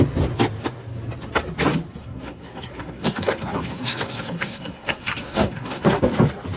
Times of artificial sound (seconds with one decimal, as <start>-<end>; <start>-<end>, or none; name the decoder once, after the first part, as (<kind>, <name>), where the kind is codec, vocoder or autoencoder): 2.0-6.0 (codec, SNAC)

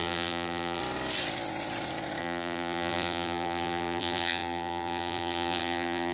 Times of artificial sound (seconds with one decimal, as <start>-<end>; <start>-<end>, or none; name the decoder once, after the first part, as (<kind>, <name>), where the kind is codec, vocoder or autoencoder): 0.0-0.8 (vocoder, BigVGAN v2); 2.2-6.1

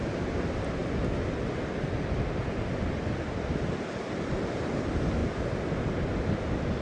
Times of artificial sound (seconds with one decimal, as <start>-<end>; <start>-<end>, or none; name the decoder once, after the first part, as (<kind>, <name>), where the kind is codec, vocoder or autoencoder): none

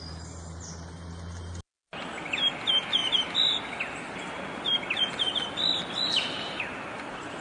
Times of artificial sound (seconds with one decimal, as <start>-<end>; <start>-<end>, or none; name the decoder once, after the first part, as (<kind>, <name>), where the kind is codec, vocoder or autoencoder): none

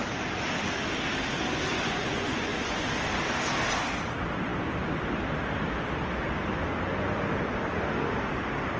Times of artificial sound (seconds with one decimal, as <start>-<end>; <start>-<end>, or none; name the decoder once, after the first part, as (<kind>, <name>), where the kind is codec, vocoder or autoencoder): 1.7-2.9 (vocoder, Vocos)

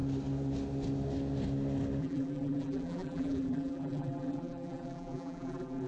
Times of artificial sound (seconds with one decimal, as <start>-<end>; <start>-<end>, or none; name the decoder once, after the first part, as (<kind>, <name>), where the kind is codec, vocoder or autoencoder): 2.0-5.9 (vocoder, BigVGAN v2)